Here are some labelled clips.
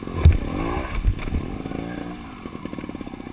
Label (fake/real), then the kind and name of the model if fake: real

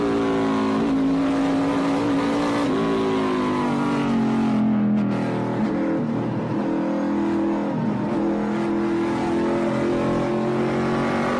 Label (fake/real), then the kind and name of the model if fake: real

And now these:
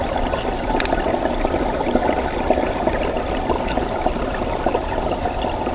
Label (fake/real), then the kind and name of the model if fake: real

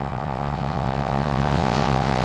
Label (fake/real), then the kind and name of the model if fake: fake, vocoder, WaveNeXt